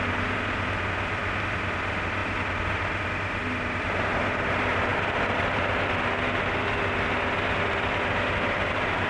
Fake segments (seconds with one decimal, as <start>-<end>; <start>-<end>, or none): none